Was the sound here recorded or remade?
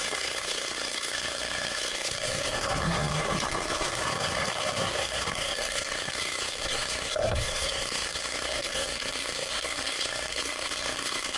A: remade